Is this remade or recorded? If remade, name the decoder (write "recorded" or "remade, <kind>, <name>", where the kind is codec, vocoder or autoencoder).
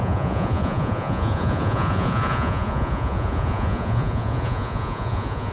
remade, vocoder, Vocos